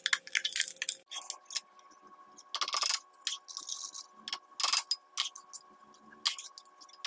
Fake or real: real